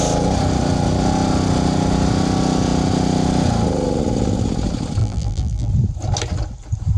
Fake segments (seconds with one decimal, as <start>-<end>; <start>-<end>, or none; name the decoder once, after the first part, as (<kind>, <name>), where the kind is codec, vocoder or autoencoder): 5.0-5.7 (vocoder, BigVGAN v2)

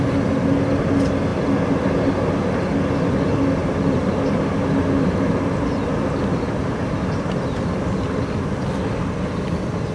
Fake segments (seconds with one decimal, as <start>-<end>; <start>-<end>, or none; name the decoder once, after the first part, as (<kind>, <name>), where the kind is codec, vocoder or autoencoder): none

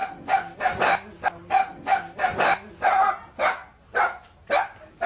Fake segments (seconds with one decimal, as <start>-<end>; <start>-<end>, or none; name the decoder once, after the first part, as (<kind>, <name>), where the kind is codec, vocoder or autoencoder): none

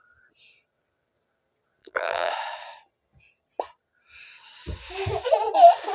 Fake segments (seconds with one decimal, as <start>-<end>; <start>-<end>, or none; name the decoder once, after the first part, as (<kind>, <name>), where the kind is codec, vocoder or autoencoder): 1.8-2.3 (vocoder, BigVGAN v2)